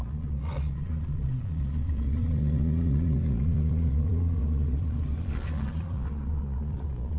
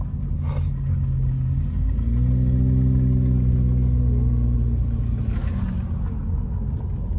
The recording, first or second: second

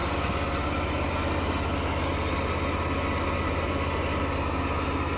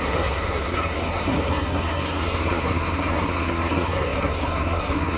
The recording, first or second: first